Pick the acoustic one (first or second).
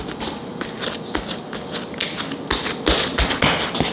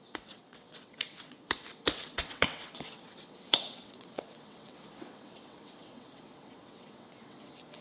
first